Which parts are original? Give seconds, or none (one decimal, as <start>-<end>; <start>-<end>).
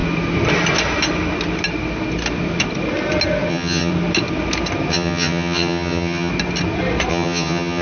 0.0-3.5; 3.9-4.9; 6.3-7.1